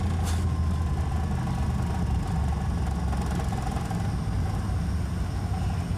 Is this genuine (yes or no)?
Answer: yes